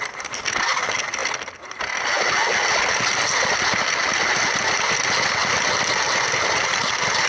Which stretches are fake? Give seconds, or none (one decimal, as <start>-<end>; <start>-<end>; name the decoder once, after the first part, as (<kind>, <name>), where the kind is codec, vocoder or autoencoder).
none